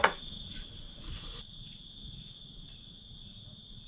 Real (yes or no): no